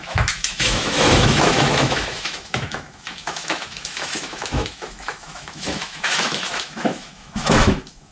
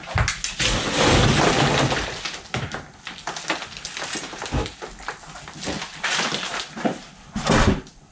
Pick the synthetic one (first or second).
first